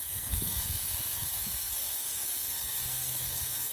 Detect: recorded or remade remade